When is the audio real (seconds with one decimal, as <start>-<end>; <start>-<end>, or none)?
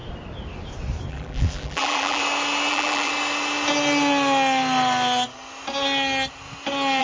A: 0.0-1.1; 2.2-2.7; 3.1-7.0